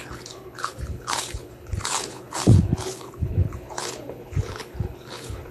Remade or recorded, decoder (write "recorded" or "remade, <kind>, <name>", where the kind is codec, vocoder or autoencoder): remade, codec, HILCodec